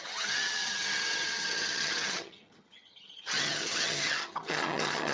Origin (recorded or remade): remade